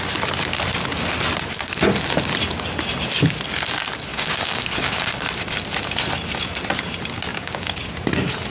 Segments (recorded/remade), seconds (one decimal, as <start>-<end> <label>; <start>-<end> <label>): 0.0-4.1 recorded; 4.1-5.1 remade; 5.1-7.3 recorded; 7.3-7.9 remade; 7.9-8.5 recorded